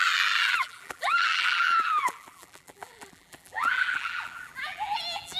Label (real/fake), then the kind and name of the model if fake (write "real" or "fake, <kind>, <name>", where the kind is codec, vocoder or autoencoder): fake, vocoder, BigVGAN v2